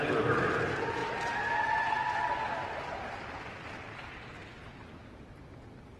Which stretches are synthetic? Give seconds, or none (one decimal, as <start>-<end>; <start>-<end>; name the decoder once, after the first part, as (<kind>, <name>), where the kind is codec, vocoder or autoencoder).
1.0-1.5 (vocoder, BigVGAN v2)